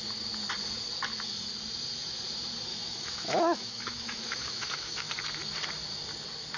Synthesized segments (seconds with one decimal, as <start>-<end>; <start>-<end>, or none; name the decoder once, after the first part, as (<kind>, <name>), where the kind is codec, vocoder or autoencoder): 2.7-5.1 (autoencoder, DAC-VAE)